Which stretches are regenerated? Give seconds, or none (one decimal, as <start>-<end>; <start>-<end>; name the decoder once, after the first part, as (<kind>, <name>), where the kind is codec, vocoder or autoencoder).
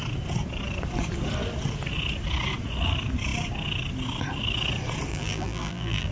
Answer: 5.1-6.1 (vocoder, BigVGAN v2)